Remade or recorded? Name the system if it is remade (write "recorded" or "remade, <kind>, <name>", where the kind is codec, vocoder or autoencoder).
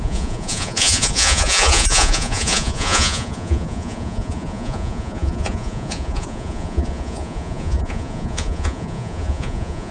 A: remade, vocoder, Vocos